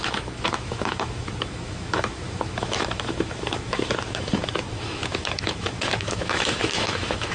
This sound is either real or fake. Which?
fake